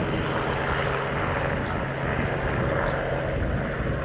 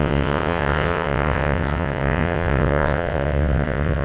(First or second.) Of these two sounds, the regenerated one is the second